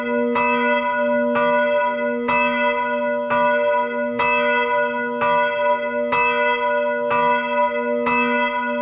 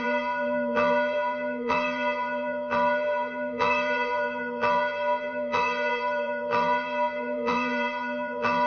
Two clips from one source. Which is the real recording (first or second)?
first